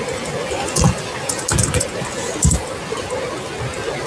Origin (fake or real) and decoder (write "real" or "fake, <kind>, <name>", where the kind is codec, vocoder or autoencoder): real